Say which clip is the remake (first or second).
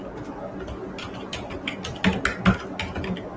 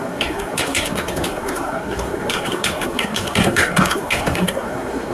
second